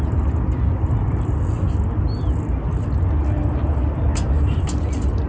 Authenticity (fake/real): real